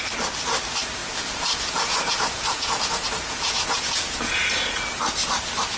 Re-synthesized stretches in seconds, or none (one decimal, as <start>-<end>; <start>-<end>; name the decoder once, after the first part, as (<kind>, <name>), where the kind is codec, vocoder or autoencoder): 1.0-4.5 (vocoder, Vocos)